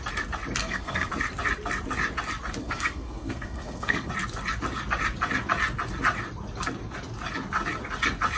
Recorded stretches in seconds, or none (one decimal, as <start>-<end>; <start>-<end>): 0.0-0.6; 1.1-2.6; 4.1-8.4